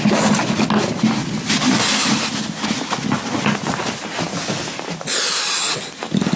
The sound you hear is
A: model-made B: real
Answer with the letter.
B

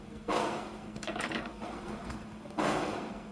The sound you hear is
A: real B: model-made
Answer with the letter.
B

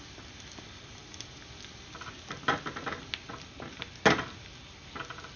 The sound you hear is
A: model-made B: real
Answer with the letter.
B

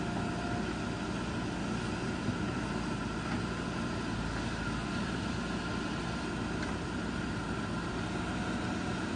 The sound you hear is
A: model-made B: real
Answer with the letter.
B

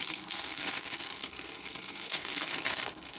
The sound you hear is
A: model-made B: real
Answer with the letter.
A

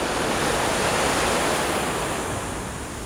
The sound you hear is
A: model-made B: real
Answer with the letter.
B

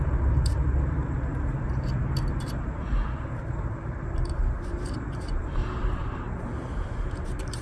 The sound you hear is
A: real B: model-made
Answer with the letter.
B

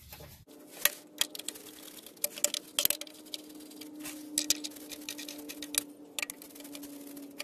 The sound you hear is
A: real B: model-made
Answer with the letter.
A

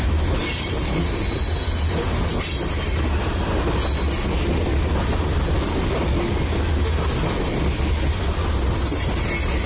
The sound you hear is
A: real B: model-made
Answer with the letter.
A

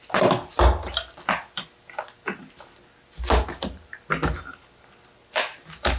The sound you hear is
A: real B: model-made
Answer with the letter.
A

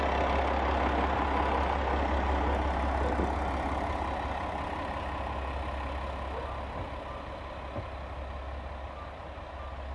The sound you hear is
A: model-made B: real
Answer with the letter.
B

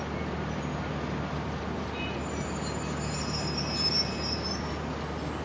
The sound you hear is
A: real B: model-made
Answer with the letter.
A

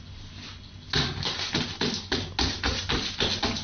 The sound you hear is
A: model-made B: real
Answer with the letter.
B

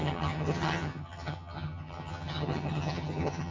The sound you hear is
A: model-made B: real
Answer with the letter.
A